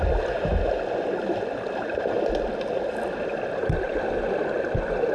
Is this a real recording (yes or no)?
yes